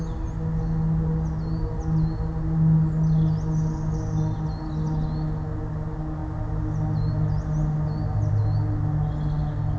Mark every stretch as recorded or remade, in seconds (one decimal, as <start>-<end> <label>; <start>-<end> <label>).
0.0-9.8 recorded